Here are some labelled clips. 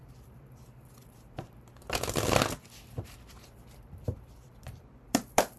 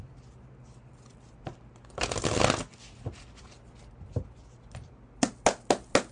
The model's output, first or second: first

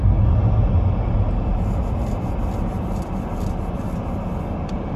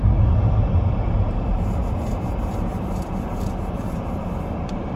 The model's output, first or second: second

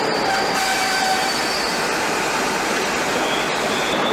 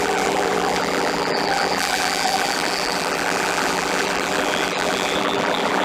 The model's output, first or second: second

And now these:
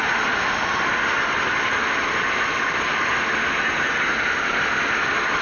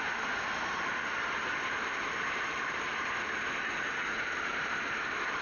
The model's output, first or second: second